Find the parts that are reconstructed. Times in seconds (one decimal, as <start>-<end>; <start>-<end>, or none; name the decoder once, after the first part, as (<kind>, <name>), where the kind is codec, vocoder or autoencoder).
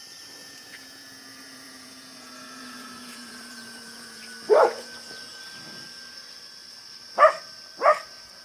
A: 0.4-4.2 (vocoder, Vocos)